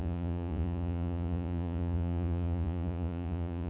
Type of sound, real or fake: fake